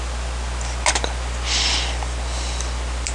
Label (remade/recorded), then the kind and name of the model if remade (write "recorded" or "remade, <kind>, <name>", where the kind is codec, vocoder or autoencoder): recorded